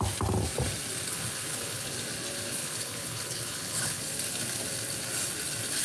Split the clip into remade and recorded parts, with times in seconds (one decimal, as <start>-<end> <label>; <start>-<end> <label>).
0.0-1.1 recorded; 1.1-1.9 remade; 1.9-2.6 recorded; 2.6-4.0 remade; 4.0-5.8 recorded